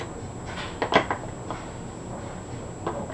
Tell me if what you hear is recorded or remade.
recorded